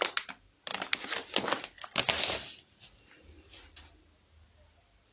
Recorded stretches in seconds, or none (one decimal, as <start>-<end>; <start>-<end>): 0.0-5.1